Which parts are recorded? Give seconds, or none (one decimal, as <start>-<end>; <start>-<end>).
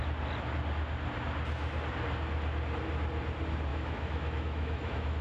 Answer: 0.0-3.7